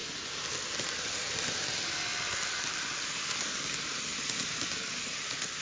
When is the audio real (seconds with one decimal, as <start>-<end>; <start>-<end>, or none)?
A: 0.0-1.1; 4.1-4.8